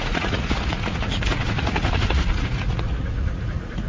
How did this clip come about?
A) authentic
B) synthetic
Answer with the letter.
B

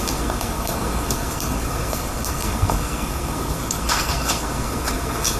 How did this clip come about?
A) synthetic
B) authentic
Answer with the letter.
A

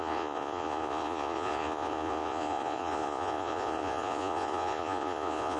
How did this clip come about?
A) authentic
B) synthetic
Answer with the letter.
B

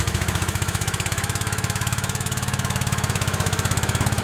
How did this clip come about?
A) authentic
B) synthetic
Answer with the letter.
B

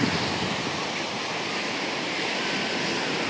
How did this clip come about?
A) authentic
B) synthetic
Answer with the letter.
A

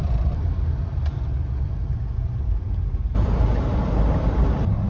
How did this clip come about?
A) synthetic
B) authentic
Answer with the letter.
A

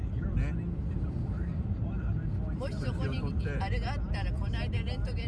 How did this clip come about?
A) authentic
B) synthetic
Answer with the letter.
A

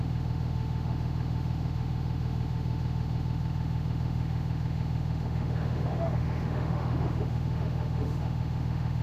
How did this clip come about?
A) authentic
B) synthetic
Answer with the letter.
B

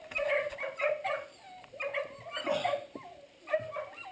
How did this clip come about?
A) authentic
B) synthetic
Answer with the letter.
A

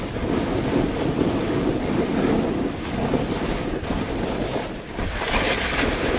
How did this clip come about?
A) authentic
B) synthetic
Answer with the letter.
A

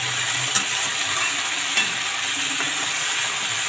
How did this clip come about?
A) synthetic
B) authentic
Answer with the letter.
A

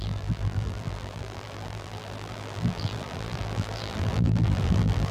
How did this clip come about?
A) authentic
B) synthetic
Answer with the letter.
B